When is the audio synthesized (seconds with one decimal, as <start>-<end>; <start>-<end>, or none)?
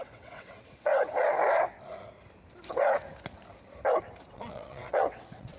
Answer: 0.0-0.9; 4.3-5.6